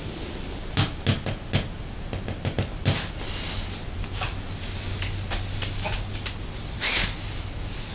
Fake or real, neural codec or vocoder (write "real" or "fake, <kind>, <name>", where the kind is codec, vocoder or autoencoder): real